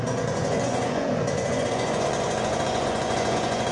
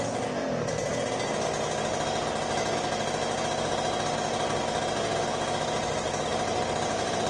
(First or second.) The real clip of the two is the second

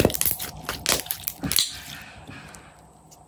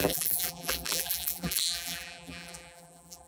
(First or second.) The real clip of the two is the first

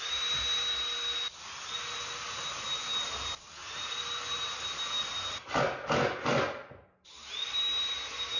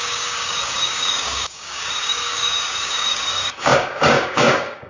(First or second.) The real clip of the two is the first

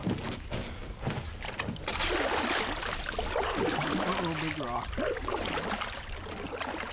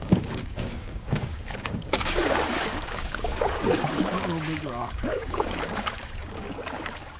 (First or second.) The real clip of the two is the first